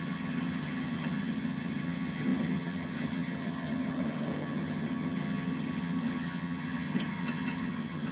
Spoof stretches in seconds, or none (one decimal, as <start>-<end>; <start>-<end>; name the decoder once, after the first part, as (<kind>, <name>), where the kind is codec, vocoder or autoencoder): 0.0-8.1 (vocoder, HiFi-GAN)